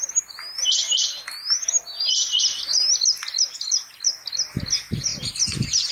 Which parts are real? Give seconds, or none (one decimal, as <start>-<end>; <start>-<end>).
0.0-5.9